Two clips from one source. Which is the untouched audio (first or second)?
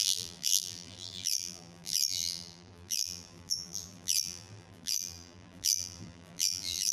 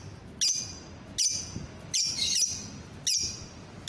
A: second